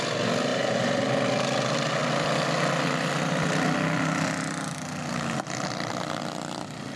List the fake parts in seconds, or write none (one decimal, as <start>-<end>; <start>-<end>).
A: 0.5-1.0